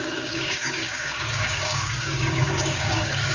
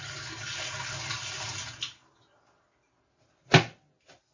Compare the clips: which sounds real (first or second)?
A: second